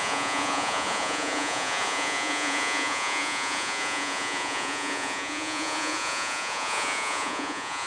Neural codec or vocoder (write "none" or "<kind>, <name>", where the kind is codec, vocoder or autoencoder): vocoder, Vocos